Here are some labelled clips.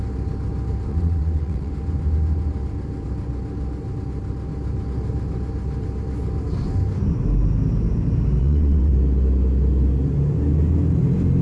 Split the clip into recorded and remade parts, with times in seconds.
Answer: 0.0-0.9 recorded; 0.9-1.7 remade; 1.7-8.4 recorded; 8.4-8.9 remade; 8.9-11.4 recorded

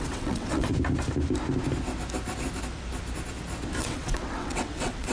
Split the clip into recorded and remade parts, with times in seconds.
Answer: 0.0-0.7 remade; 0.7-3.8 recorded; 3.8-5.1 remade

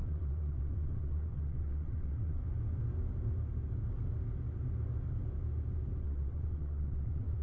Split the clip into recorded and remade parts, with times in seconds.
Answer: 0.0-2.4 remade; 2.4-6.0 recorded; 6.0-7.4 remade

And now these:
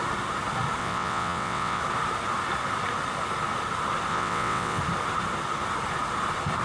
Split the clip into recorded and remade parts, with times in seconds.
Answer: 0.0-0.8 recorded; 0.8-1.8 remade; 1.8-4.1 recorded; 4.1-4.8 remade; 4.8-6.6 recorded

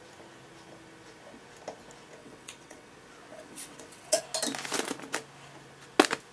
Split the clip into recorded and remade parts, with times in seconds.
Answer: 0.0-2.2 recorded; 2.2-2.9 remade; 2.9-3.3 recorded; 3.3-4.2 remade; 4.2-6.3 recorded

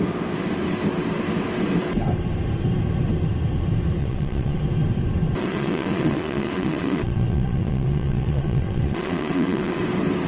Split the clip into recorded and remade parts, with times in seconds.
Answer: 0.0-4.0 recorded; 4.0-4.6 remade; 4.6-5.4 recorded; 5.4-9.8 remade; 9.8-10.3 recorded